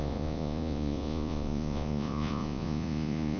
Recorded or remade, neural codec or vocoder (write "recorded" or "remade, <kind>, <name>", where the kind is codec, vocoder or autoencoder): remade, vocoder, Vocos